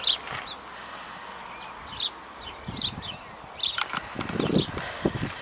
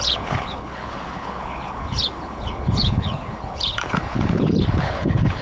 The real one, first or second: first